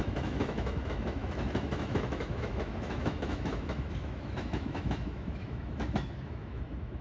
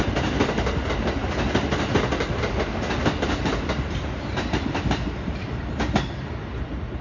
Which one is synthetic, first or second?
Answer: first